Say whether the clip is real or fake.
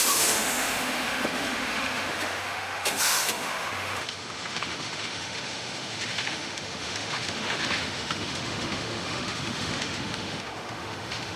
fake